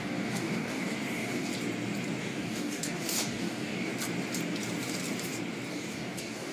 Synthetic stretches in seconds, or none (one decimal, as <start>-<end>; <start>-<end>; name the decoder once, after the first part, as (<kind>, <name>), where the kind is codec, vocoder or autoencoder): 0.0-1.5 (codec, DAC); 2.2-3.9; 5.7-6.5